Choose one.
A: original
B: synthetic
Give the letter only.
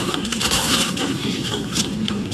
B